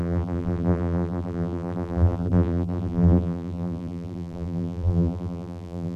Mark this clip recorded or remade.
remade